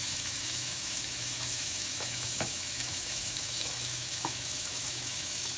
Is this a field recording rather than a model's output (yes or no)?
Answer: no